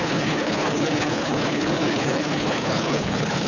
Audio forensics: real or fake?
fake